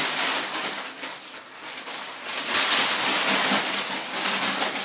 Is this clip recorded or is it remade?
recorded